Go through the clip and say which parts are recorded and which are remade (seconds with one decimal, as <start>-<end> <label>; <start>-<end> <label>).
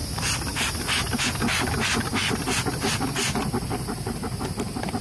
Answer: 0.0-5.0 recorded